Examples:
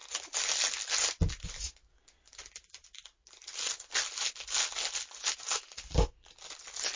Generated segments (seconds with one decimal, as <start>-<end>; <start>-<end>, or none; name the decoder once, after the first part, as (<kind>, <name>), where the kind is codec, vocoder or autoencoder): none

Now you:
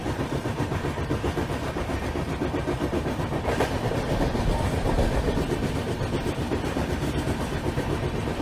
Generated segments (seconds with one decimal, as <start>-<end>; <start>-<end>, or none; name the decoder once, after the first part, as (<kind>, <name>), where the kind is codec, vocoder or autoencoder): none

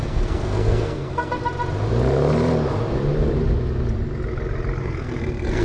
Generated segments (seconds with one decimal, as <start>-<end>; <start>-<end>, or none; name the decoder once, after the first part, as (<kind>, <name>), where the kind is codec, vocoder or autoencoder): 0.0-1.4 (codec, SNAC); 4.8-5.6

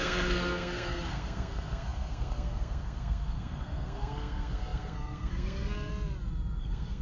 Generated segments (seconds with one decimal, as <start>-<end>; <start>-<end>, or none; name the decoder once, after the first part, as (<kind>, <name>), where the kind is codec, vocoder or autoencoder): 0.0-5.9 (codec, SNAC); 6.6-7.0